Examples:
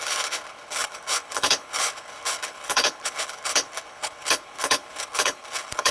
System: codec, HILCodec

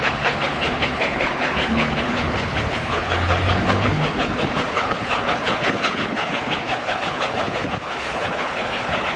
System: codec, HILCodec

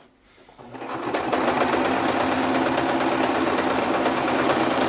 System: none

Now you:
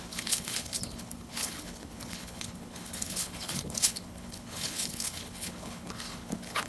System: codec, HILCodec